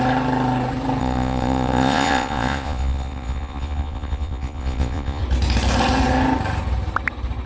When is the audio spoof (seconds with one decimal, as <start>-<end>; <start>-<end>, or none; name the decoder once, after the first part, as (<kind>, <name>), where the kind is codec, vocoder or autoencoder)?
1.0-5.2 (vocoder, Vocos)